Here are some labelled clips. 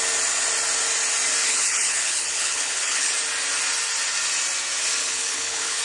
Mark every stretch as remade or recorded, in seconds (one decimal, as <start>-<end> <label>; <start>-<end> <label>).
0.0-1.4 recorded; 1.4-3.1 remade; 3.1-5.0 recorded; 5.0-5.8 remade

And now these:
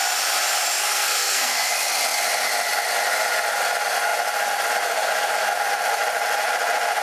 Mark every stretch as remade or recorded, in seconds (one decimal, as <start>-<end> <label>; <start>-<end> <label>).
0.0-0.8 recorded; 0.8-1.7 remade; 1.7-7.0 recorded

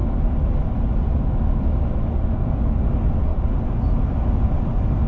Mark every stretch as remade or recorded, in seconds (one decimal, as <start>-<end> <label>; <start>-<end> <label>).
0.0-5.1 recorded

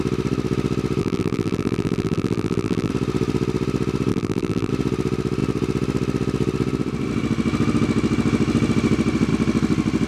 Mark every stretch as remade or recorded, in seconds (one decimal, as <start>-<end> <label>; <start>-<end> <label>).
0.0-1.0 recorded; 1.0-2.9 remade; 2.9-4.1 recorded; 4.1-4.7 remade; 4.7-10.1 recorded

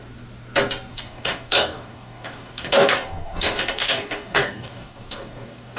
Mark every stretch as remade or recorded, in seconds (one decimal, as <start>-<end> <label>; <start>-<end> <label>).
0.0-0.9 recorded; 0.9-5.8 remade

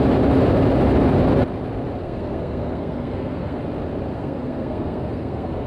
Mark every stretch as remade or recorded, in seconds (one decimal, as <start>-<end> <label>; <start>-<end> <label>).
0.0-2.0 recorded; 2.0-3.6 remade; 3.6-4.1 recorded; 4.1-5.7 remade